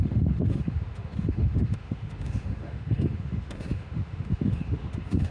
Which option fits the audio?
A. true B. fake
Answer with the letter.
B